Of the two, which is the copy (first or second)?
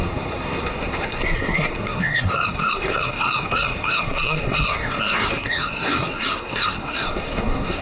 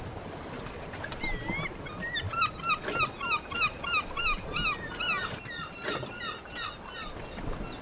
first